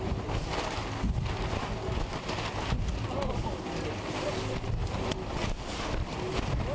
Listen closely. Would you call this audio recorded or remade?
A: recorded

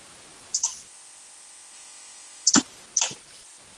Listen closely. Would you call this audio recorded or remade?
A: recorded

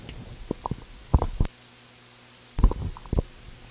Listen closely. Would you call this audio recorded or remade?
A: recorded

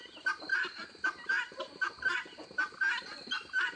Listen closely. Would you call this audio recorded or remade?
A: recorded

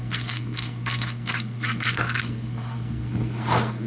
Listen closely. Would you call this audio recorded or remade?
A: remade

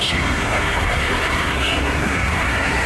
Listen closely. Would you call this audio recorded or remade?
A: remade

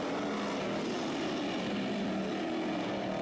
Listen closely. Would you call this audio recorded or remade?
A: recorded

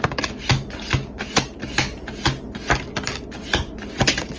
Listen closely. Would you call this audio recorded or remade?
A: recorded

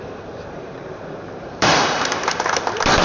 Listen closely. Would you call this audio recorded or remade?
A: remade